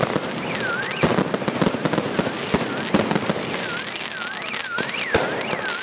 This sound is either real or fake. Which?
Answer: real